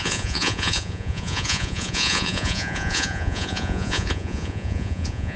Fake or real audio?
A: fake